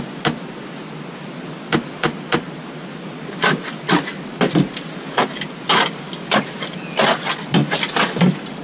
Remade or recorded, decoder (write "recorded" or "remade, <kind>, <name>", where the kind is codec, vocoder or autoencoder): recorded